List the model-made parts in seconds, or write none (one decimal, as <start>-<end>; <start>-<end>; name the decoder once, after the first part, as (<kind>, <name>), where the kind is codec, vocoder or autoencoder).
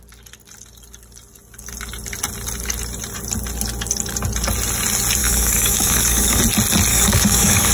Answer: 5.2-6.4 (codec, DAC); 6.9-7.7